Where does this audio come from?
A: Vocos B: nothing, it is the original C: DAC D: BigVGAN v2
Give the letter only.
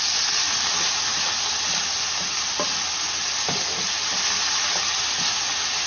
D